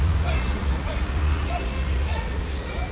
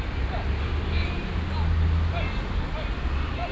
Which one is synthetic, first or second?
first